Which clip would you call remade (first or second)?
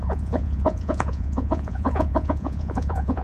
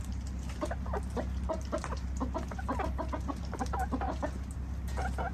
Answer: first